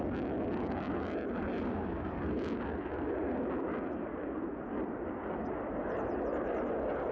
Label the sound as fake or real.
real